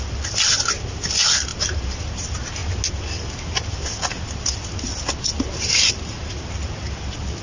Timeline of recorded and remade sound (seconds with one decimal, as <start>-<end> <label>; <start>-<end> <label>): 0.0-7.4 recorded